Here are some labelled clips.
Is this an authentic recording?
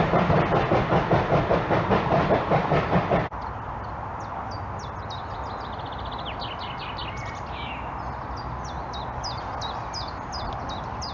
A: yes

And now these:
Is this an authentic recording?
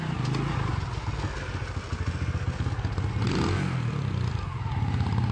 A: yes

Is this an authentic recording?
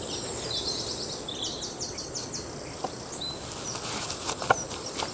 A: yes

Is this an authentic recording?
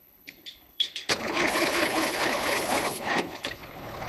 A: no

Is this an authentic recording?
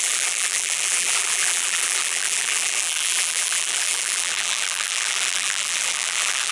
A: no